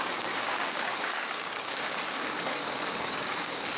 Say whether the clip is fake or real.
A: fake